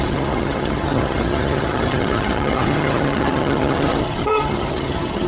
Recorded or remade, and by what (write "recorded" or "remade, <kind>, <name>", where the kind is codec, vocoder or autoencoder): remade, vocoder, HiFi-GAN